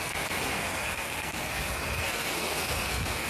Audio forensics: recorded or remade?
remade